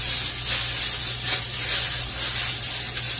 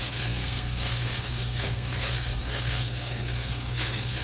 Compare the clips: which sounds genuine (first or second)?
first